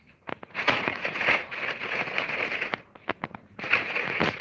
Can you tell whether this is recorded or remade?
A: remade